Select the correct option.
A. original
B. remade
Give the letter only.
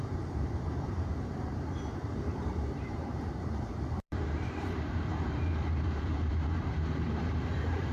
B